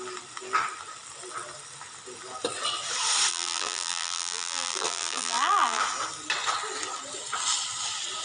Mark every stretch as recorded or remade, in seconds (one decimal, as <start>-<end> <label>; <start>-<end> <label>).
0.0-3.3 recorded; 3.3-5.8 remade; 5.8-8.2 recorded